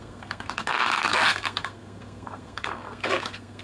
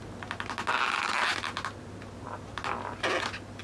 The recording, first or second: second